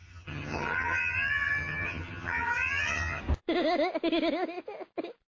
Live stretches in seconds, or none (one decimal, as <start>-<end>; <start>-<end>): 3.2-5.4

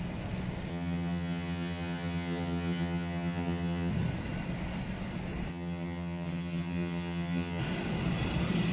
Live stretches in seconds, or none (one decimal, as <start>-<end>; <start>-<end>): 0.0-0.7; 3.9-5.5; 7.6-8.7

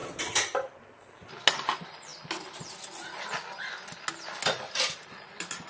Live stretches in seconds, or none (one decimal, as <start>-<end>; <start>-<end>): 0.0-5.7

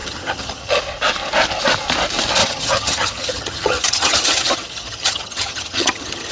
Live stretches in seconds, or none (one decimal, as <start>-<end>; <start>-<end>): 0.8-2.4